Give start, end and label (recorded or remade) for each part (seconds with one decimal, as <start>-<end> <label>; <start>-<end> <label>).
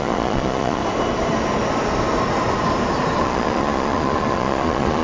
0.0-0.8 remade; 0.8-3.2 recorded; 3.2-5.0 remade